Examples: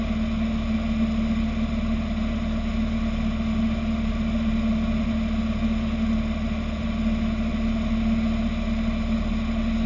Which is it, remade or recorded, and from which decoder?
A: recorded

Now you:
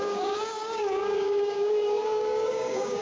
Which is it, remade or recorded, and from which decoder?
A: remade, codec, DAC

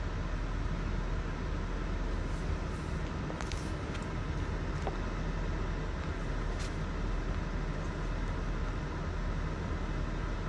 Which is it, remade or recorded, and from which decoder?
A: recorded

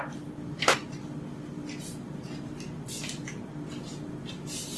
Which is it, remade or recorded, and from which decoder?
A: recorded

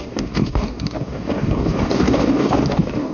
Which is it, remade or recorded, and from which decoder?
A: remade, codec, DAC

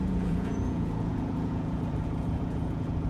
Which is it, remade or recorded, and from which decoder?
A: remade, vocoder, Vocos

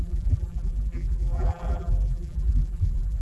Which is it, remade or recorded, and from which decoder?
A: remade, vocoder, BigVGAN v2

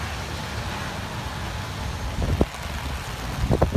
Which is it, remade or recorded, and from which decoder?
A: recorded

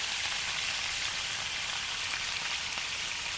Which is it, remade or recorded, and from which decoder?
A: remade, vocoder, BigVGAN v2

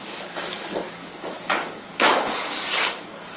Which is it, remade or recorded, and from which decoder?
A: remade, codec, DAC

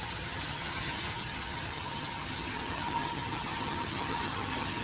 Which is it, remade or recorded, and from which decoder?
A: remade, vocoder, HiFi-GAN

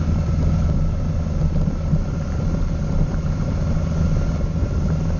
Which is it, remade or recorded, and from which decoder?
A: recorded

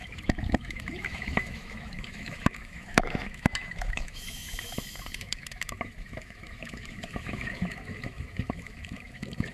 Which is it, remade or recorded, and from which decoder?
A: remade, autoencoder, DAC-VAE